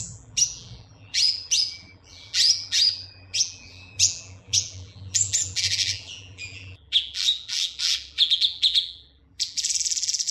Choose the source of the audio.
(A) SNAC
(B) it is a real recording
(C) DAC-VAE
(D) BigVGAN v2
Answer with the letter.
D